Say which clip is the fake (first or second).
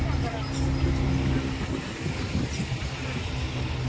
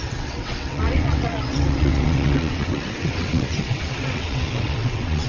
second